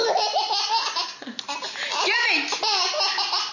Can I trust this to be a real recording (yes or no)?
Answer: yes